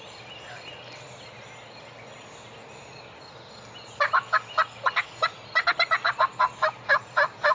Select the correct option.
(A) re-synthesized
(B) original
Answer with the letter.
B